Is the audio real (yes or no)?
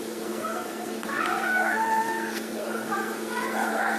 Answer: no